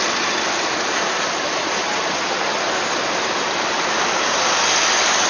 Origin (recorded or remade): recorded